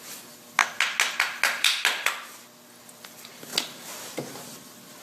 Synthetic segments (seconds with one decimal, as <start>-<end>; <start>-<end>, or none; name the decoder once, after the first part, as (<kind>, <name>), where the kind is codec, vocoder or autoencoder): none